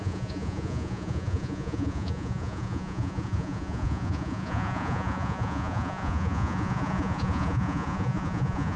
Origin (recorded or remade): remade